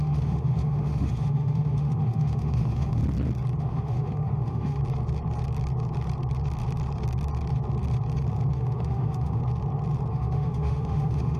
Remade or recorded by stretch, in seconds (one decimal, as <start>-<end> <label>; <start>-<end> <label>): 0.0-3.0 remade; 3.0-3.6 recorded; 3.6-4.8 remade; 4.8-8.5 recorded; 8.5-9.4 remade; 9.4-10.1 recorded; 10.1-11.4 remade